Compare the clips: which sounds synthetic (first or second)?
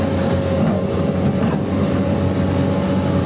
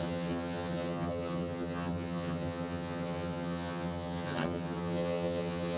second